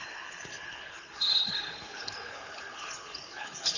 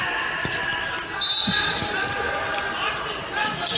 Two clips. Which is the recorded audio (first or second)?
second